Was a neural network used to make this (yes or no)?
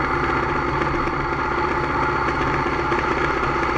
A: no